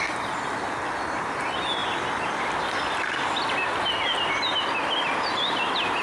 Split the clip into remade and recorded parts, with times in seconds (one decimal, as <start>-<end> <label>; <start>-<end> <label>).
0.0-6.0 recorded